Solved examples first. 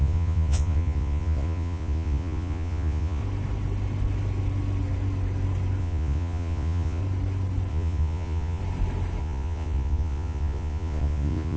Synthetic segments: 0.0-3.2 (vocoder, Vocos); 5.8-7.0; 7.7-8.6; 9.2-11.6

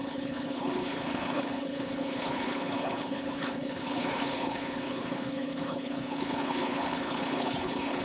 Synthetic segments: 0.0-8.0 (codec, HILCodec)